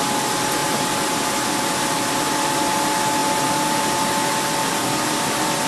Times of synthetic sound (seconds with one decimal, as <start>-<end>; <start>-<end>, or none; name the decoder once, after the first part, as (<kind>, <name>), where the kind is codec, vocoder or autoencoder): 0.6-1.3 (vocoder, BigVGAN v2)